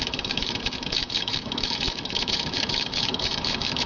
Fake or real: fake